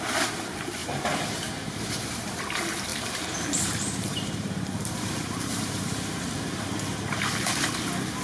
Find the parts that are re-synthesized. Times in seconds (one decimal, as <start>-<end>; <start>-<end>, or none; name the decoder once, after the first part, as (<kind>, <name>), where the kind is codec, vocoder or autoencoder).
0.8-2.4 (vocoder, BigVGAN v2); 2.9-6.3